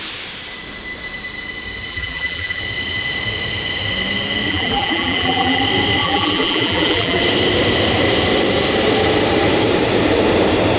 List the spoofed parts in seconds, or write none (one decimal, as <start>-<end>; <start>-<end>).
1.9-2.6; 4.5-5.6; 6.0-7.2